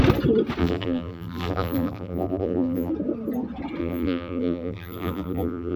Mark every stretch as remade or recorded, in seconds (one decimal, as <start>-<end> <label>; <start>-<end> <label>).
0.0-0.6 recorded; 0.6-2.9 remade; 2.9-3.8 recorded; 3.8-5.8 remade